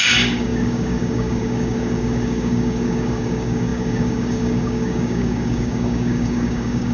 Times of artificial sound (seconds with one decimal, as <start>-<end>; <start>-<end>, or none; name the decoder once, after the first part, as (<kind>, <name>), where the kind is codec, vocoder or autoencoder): 0.0-6.9 (codec, DAC)